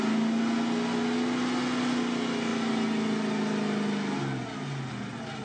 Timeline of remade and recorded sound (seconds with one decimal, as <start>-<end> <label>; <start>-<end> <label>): 0.0-5.4 recorded